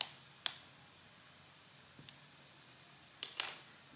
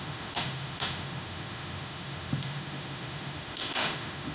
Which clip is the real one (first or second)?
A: first